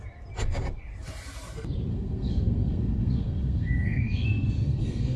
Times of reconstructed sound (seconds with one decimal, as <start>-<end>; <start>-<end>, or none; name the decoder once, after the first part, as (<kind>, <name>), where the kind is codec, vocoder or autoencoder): 1.9-5.2 (codec, SNAC)